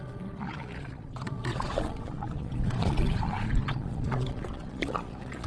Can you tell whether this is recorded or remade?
remade